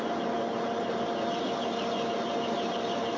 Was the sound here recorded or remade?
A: recorded